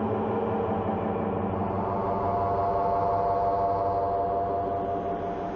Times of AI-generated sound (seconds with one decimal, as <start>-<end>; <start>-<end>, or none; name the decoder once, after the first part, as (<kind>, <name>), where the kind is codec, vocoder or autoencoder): none